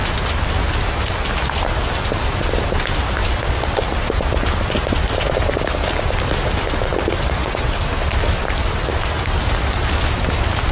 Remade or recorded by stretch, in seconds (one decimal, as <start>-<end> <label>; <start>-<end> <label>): 0.0-10.7 recorded